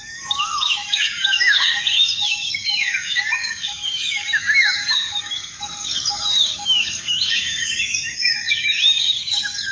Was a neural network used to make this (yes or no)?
yes